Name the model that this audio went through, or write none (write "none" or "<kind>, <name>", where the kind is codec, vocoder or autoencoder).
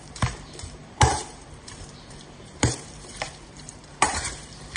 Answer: vocoder, BigVGAN v2